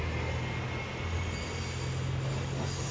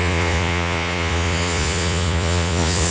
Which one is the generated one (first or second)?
second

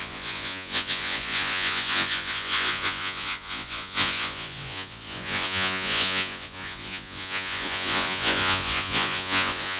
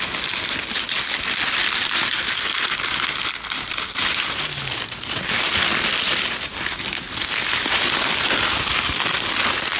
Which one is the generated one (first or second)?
first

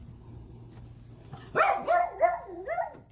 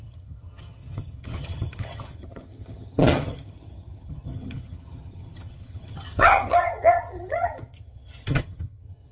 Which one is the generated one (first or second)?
second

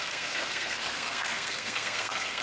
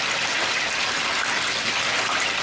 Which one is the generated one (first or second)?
first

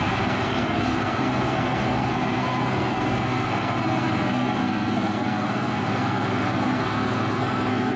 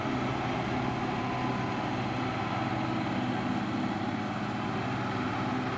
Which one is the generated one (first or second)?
first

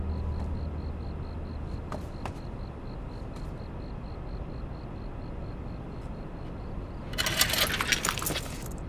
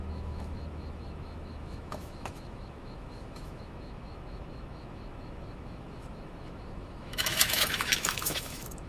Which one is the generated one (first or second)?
second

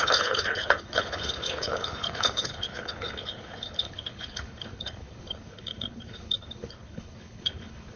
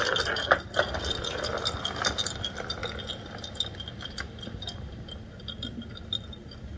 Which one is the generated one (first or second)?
first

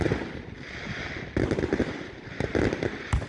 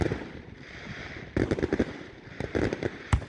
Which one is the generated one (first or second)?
second